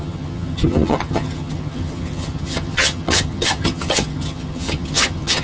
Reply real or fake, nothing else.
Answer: fake